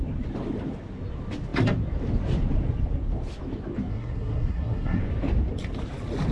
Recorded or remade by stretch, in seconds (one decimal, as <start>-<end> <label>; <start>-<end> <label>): 0.0-3.9 recorded; 3.9-5.0 remade; 5.0-6.3 recorded